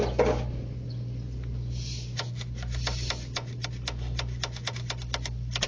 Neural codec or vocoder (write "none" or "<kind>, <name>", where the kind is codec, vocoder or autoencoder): none